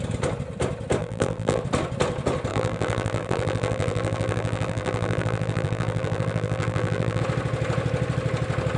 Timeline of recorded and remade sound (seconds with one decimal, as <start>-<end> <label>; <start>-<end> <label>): 0.0-1.0 recorded; 1.0-1.6 remade; 1.6-2.5 recorded; 2.5-7.2 remade; 7.2-8.8 recorded